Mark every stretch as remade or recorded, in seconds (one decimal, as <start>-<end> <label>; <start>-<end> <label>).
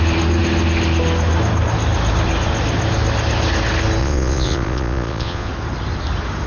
0.0-4.0 recorded; 4.0-5.5 remade; 5.5-6.5 recorded